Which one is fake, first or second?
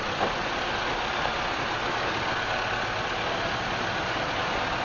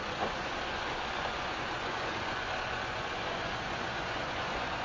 second